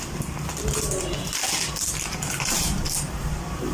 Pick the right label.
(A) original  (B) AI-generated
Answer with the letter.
A